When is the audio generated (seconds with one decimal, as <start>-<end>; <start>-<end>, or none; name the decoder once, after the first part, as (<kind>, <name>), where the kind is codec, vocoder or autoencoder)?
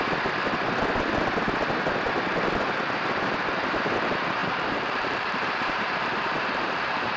4.4-7.2 (vocoder, BigVGAN v2)